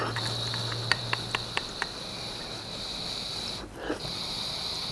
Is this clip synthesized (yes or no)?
yes